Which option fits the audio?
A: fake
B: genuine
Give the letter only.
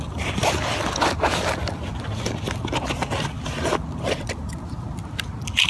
B